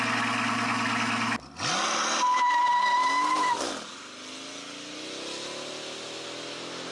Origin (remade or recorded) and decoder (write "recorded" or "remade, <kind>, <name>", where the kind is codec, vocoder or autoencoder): recorded